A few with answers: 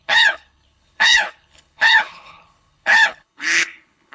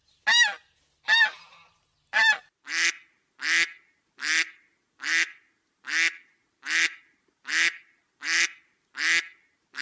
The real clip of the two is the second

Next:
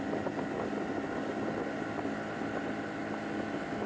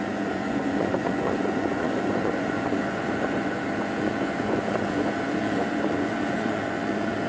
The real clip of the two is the first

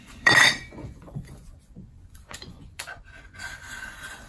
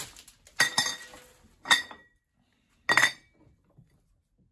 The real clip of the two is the second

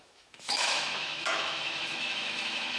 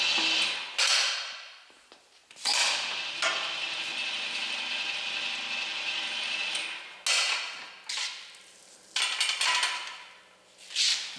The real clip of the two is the second